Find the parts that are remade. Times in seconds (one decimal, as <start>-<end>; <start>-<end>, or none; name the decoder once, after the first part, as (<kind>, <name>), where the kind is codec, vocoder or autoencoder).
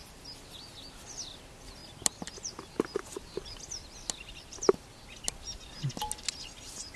none